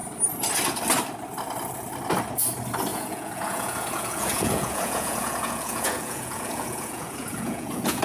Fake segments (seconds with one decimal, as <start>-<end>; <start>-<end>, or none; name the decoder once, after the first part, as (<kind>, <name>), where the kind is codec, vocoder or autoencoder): 2.9-8.0 (vocoder, Vocos)

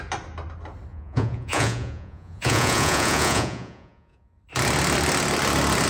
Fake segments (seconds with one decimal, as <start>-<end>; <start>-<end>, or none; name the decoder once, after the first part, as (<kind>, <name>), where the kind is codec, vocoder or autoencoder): 0.9-4.4 (vocoder, Vocos)

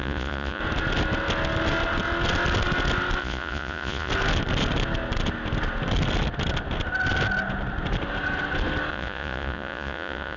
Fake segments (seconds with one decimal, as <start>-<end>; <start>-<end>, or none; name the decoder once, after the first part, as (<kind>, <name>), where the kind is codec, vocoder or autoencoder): 0.0-0.6 (vocoder, Vocos); 3.2-4.1; 8.9-10.4

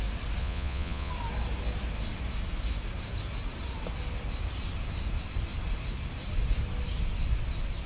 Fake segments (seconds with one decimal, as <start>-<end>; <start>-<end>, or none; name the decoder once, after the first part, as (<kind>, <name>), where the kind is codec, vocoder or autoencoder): 0.4-1.1 (vocoder, Vocos)

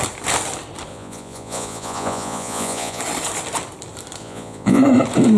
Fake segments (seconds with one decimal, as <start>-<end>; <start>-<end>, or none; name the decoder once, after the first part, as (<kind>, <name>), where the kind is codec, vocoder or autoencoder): 0.9-3.0 (vocoder, Vocos); 4.2-4.8

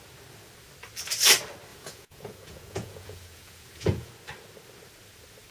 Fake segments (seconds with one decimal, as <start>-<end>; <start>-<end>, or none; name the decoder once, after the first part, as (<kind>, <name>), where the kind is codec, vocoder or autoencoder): 1.7-4.1 (vocoder, Vocos)

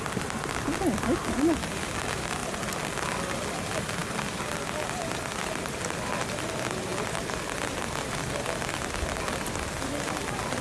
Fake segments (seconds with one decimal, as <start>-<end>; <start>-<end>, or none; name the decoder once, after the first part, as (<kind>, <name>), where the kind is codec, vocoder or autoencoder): none

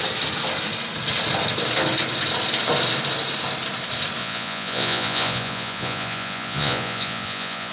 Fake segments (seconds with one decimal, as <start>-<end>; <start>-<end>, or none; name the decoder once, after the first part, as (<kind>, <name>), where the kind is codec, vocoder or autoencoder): 4.2-7.7 (vocoder, Vocos)